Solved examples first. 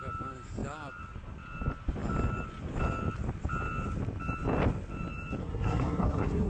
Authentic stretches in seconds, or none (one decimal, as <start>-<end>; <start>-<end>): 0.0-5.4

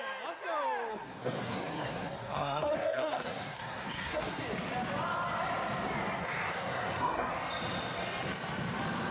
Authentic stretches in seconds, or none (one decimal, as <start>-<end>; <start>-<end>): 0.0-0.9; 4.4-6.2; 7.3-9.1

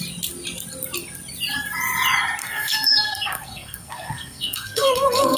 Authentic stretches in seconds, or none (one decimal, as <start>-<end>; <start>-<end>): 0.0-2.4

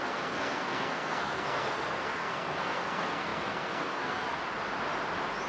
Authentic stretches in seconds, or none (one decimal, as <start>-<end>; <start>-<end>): 4.4-5.5

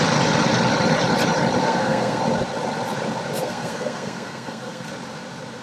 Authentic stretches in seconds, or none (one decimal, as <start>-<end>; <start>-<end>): 0.0-1.6; 2.2-3.4; 4.9-5.6